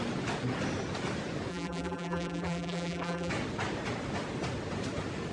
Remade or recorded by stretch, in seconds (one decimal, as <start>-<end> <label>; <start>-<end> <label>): 0.0-1.5 recorded; 1.5-3.3 remade; 3.3-5.3 recorded